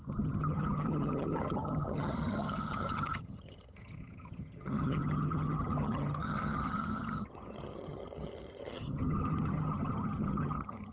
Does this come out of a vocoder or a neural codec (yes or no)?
yes